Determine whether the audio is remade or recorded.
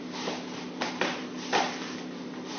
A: recorded